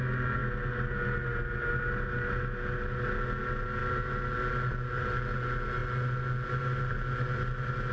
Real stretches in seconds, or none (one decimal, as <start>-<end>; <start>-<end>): 0.0-7.9